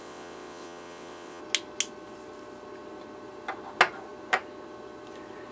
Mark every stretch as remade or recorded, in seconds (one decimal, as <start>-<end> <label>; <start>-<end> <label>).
0.0-1.4 remade; 1.4-5.5 recorded